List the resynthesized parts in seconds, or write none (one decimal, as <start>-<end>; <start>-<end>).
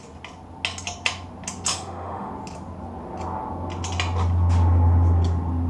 1.7-2.3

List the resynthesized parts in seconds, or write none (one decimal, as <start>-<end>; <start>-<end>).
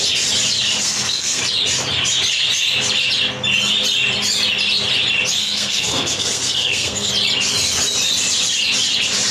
0.8-1.4; 5.4-7.1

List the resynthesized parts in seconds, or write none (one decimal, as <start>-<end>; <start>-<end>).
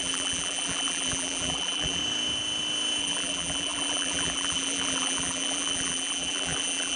0.0-2.0; 3.0-7.0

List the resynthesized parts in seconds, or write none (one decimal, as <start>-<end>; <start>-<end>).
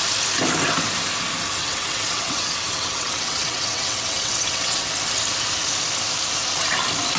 1.6-4.9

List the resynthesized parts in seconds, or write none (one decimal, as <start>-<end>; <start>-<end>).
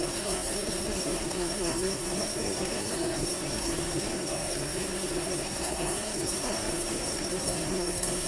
0.0-8.3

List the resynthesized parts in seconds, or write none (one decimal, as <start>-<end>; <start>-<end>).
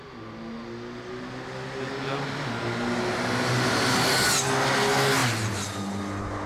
none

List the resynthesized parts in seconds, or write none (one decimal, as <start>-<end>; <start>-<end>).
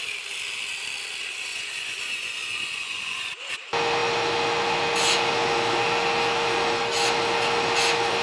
1.5-3.5